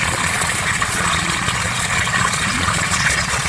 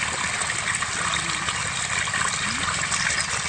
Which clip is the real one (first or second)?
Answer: second